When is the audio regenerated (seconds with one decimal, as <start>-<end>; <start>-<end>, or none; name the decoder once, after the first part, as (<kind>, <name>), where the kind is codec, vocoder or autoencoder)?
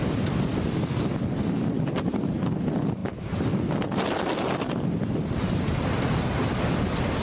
none